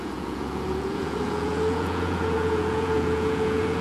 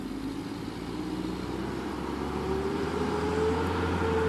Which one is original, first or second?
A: second